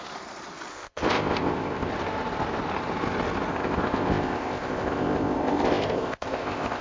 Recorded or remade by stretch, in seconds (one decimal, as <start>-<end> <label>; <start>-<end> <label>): 0.0-0.7 recorded; 0.7-1.9 remade; 1.9-3.5 recorded; 3.5-6.8 remade